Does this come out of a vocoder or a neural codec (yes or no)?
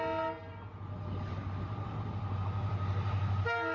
no